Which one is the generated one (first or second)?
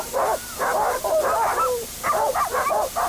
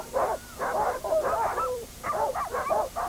second